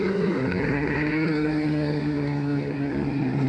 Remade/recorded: remade